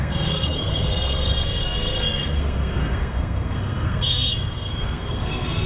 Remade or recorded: remade